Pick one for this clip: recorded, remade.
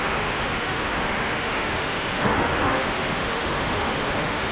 remade